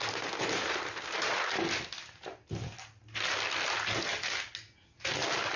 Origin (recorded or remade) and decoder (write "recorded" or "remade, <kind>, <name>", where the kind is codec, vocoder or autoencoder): recorded